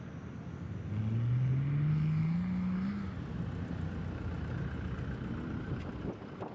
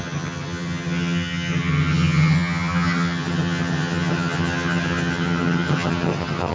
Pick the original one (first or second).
first